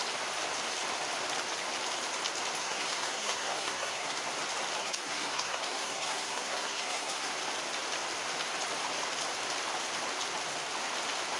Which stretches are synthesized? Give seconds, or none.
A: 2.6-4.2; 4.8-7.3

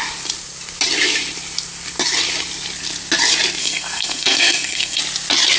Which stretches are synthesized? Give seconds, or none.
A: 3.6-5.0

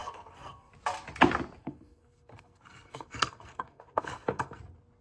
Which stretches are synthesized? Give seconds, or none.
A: 0.0-0.7; 1.6-4.6